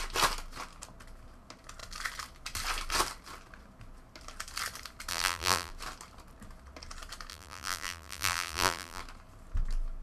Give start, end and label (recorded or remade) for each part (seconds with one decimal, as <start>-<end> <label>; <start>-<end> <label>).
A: 0.0-5.1 recorded; 5.1-5.7 remade; 5.7-7.3 recorded; 7.3-9.0 remade; 9.0-10.0 recorded